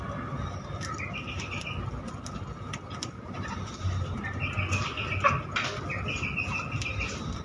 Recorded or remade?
recorded